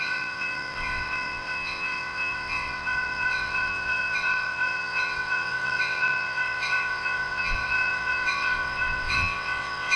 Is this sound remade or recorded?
remade